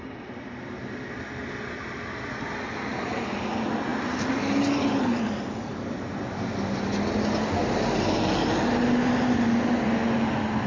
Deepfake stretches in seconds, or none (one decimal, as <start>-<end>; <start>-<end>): none